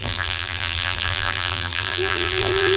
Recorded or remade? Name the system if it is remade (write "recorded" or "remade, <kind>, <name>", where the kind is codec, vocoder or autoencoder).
remade, vocoder, BigVGAN v2